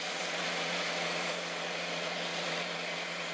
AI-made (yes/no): yes